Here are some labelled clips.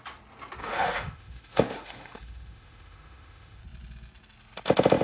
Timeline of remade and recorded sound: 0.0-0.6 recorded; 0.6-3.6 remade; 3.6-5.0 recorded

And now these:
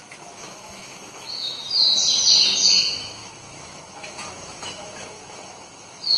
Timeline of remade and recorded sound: 0.0-1.6 remade; 1.6-2.8 recorded; 2.8-6.2 remade

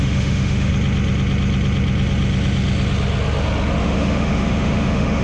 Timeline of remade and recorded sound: 0.0-0.7 remade; 0.7-3.8 recorded; 3.8-5.2 remade